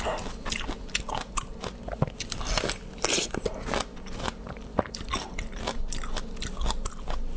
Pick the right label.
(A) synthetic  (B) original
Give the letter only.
B